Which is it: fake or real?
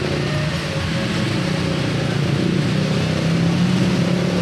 real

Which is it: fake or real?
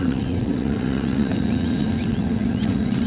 fake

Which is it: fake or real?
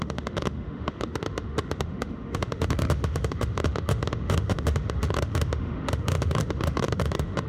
fake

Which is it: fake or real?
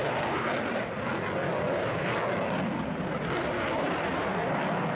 real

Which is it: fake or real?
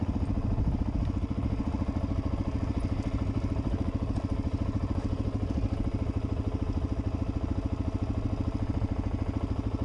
real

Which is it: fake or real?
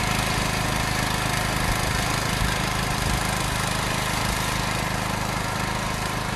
real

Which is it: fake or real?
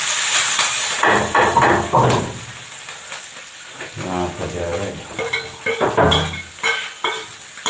real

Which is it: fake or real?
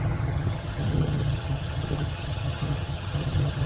fake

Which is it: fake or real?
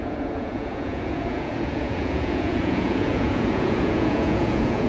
fake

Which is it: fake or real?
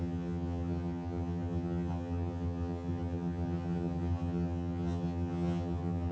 fake